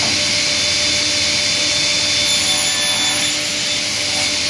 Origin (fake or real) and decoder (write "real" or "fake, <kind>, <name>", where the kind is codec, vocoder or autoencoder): real